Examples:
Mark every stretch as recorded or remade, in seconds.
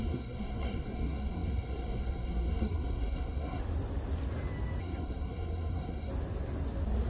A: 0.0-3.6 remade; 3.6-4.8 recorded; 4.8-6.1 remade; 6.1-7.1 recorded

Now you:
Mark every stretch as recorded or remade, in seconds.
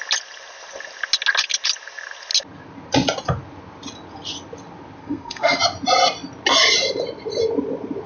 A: 0.0-5.0 recorded; 5.0-5.6 remade; 5.6-8.1 recorded